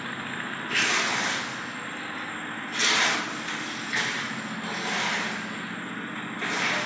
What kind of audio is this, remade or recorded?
recorded